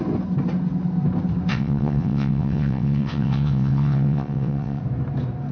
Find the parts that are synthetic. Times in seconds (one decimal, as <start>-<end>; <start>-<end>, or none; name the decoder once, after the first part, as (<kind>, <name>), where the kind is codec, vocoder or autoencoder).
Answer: 1.5-4.8 (vocoder, WaveNeXt)

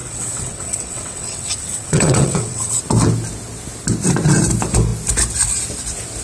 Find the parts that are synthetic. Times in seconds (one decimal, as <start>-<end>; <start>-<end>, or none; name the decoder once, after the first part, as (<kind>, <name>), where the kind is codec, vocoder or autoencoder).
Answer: 0.0-2.8 (vocoder, WaveNeXt)